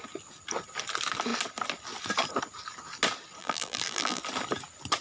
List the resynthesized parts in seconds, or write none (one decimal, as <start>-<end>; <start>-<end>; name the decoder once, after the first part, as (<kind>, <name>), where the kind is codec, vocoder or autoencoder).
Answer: 3.4-4.2 (vocoder, BigVGAN v2)